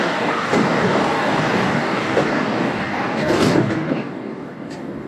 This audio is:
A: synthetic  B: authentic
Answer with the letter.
A